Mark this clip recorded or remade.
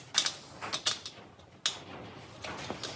recorded